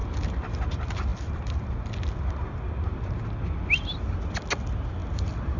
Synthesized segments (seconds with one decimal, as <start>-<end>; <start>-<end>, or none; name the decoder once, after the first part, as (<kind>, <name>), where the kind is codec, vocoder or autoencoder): 5.0-5.6 (vocoder, BigVGAN v2)

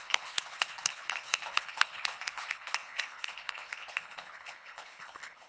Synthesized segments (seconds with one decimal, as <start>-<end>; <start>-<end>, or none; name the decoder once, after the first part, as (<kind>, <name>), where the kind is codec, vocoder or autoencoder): 0.0-5.5 (codec, HILCodec)